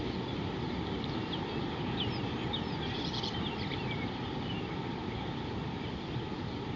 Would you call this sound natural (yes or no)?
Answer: yes